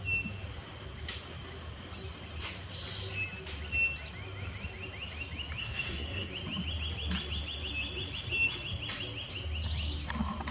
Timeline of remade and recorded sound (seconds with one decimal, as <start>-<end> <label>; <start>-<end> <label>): 0.0-5.6 recorded; 5.6-6.3 remade; 6.3-10.5 recorded